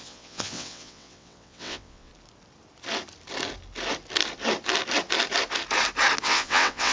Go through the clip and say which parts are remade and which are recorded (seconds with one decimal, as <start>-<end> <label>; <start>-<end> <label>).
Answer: 0.0-2.1 remade; 2.1-6.2 recorded; 6.2-6.9 remade

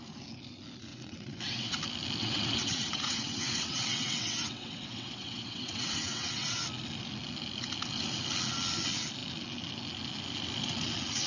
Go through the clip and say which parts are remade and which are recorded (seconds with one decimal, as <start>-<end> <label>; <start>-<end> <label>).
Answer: 0.0-0.9 recorded; 0.9-1.8 remade; 1.8-2.2 recorded; 2.2-6.6 remade; 6.6-11.3 recorded

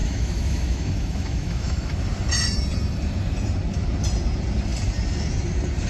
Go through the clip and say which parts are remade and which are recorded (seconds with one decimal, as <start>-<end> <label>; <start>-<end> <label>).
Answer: 0.0-2.0 remade; 2.0-5.9 recorded

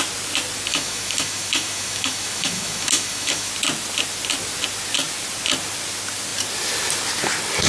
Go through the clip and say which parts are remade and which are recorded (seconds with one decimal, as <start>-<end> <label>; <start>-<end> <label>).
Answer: 0.0-0.7 recorded; 0.7-3.5 remade; 3.5-7.7 recorded

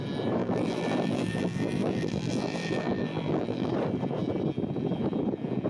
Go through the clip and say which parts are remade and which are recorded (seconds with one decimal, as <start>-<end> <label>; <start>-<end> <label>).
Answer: 0.0-0.4 recorded; 0.4-3.7 remade; 3.7-5.7 recorded

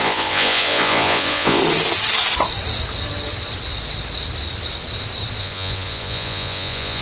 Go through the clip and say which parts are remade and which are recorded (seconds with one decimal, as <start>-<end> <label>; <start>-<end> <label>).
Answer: 0.0-1.6 remade; 1.6-5.4 recorded; 5.4-7.0 remade

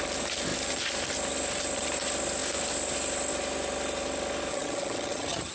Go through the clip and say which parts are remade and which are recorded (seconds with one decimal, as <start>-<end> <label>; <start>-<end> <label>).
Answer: 0.0-4.5 recorded; 4.5-5.5 remade